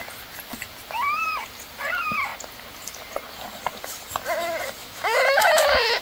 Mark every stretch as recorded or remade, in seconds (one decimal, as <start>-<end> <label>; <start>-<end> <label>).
0.0-4.8 recorded; 4.8-6.0 remade

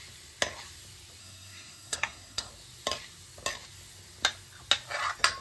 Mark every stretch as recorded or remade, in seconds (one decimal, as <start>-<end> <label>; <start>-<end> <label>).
0.0-1.2 recorded; 1.2-2.5 remade; 2.5-5.4 recorded

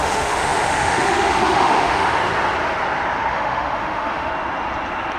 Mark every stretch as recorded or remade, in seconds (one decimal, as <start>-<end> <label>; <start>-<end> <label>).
0.0-2.2 remade; 2.2-3.3 recorded; 3.3-4.3 remade; 4.3-5.2 recorded

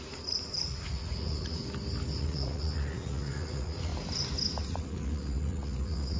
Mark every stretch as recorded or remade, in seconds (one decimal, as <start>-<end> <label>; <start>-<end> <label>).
0.0-1.6 remade; 1.6-2.2 recorded; 2.2-3.9 remade; 3.9-4.7 recorded; 4.7-6.2 remade